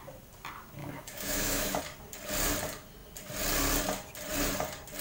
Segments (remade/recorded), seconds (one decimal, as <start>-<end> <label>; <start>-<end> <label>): 0.0-0.8 recorded; 0.8-1.8 remade; 1.8-5.0 recorded

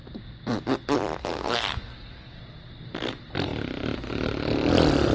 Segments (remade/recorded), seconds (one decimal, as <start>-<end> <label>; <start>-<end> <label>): 0.0-1.2 recorded; 1.2-2.4 remade; 2.4-5.1 recorded

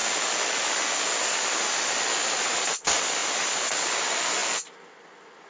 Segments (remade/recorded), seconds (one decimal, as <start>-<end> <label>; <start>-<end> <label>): 0.0-5.5 recorded

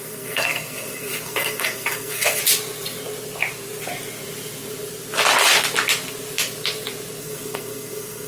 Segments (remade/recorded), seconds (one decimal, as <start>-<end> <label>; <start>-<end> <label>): 0.0-2.4 remade; 2.4-7.2 recorded; 7.2-8.3 remade

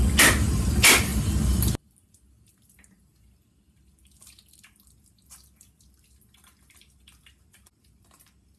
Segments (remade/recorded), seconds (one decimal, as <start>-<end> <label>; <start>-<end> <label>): 0.0-8.6 recorded

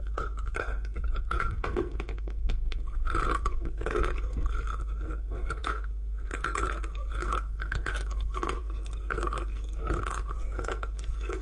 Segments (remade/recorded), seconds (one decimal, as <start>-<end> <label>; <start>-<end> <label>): 0.0-11.4 remade

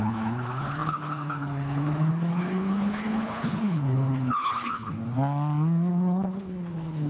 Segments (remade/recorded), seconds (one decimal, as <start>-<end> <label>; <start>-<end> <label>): 0.0-5.0 remade; 5.0-5.9 recorded; 5.9-7.1 remade

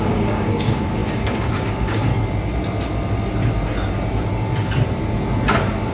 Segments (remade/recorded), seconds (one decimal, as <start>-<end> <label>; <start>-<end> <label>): 0.0-2.1 remade; 2.1-5.9 recorded